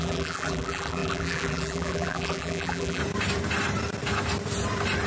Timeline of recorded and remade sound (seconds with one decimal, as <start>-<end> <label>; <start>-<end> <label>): 0.0-3.0 remade; 3.0-5.1 recorded